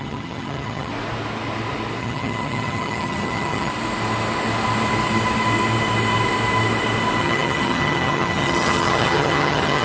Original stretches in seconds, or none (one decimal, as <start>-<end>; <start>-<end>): 0.9-2.0; 3.7-7.2